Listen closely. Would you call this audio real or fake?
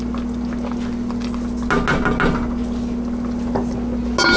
real